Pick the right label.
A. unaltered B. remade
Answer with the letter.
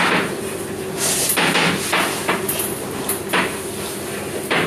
A